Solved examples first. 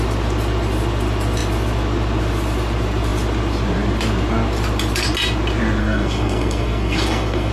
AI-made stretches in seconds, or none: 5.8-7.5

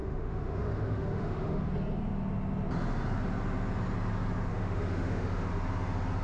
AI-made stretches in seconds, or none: 0.0-1.7; 4.5-5.5